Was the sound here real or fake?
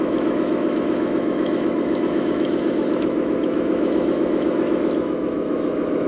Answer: fake